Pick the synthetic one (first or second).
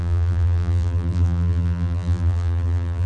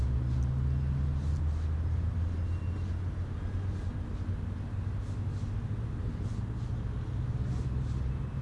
first